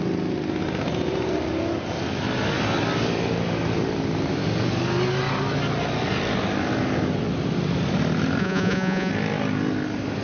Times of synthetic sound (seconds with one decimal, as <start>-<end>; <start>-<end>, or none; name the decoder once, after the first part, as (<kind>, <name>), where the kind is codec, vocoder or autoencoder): 8.4-9.1 (vocoder, Vocos)